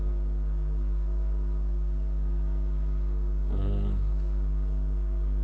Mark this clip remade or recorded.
remade